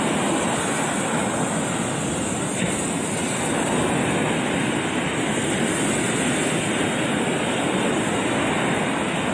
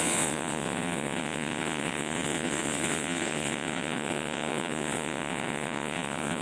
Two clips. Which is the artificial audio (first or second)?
second